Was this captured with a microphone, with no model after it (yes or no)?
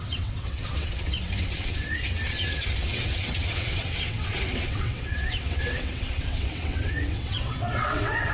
no